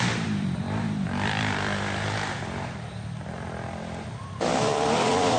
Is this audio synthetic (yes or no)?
yes